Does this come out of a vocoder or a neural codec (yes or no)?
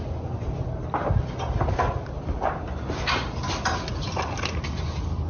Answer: no